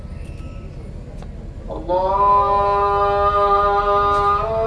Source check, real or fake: real